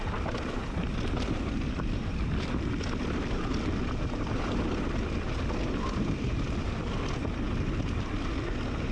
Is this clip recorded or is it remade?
remade